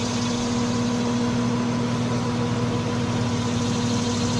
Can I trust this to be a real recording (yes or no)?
yes